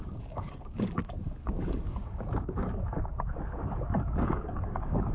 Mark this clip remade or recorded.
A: remade